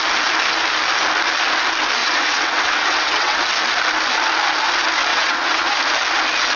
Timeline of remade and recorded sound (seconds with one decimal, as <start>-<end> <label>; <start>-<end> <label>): 0.0-2.0 recorded; 2.0-3.4 remade; 3.4-5.1 recorded; 5.1-5.7 remade; 5.7-6.6 recorded